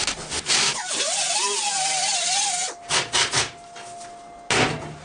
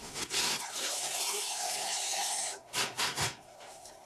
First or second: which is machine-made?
second